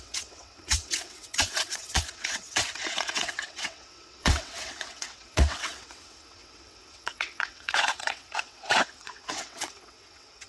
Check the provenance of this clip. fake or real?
fake